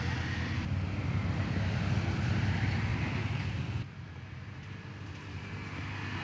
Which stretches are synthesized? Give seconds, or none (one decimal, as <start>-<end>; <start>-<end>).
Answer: none